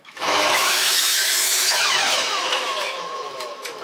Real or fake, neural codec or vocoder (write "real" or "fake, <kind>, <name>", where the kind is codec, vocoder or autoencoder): fake, autoencoder, DAC-VAE